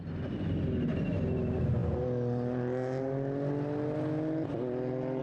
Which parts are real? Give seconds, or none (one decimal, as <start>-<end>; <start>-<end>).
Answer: 0.0-5.2